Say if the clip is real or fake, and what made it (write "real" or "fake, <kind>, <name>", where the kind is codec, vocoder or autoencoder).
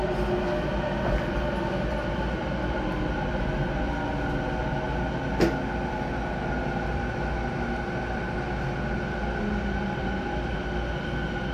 real